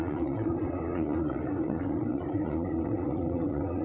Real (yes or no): no